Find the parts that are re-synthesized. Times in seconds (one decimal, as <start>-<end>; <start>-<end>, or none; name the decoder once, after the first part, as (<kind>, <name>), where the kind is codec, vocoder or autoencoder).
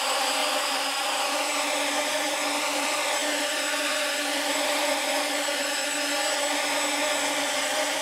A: 0.0-0.4 (vocoder, BigVGAN v2); 1.0-1.5; 2.1-5.8; 7.4-8.0